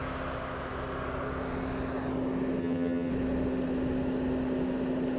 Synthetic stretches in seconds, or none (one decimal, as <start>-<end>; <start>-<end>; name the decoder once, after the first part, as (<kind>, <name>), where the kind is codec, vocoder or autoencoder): 2.6-3.1 (vocoder, HiFi-GAN)